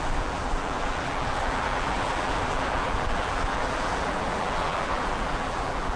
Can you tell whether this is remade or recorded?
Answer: remade